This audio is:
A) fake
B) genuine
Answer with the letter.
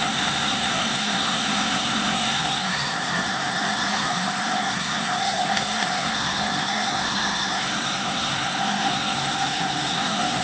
A